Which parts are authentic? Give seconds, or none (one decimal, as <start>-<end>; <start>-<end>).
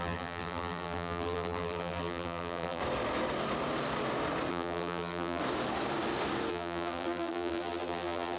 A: 2.8-4.5; 5.4-6.5